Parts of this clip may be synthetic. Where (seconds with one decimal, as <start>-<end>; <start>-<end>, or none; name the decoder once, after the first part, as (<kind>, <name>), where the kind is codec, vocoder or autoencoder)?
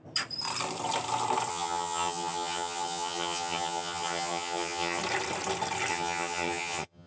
1.5-5.0 (vocoder, HiFi-GAN); 5.9-7.1